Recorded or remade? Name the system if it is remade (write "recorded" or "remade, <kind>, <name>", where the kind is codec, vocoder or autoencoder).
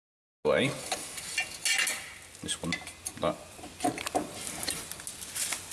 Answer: recorded